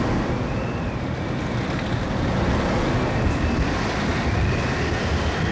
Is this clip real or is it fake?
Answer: real